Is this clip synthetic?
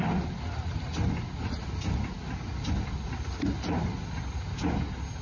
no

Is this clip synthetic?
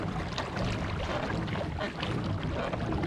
no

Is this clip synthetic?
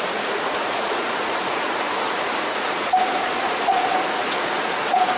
yes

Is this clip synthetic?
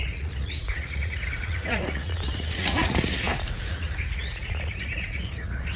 yes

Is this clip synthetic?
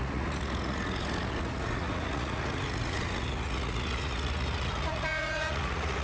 yes